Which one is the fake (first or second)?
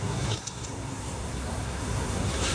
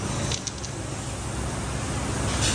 first